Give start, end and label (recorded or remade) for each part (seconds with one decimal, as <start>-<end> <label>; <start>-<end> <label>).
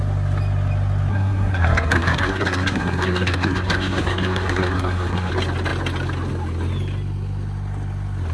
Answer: 0.0-1.1 recorded; 1.1-5.3 remade; 5.3-8.3 recorded